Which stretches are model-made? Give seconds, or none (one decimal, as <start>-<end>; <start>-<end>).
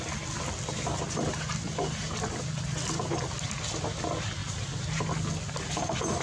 none